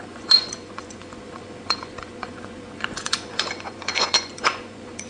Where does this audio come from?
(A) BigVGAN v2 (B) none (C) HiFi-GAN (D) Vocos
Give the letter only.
D